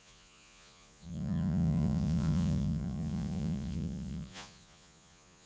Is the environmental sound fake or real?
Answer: fake